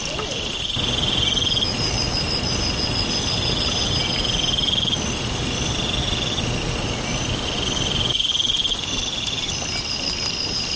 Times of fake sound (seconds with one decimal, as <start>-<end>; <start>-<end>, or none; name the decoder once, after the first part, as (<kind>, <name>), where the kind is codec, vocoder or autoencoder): none